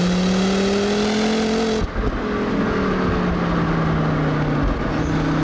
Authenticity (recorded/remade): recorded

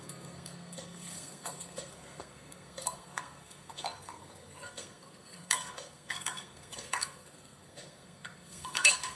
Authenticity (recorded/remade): remade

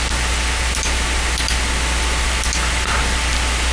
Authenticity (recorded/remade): recorded